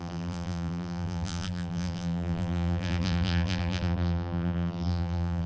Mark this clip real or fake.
fake